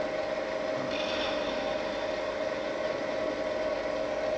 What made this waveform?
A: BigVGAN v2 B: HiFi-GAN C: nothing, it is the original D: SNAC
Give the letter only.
C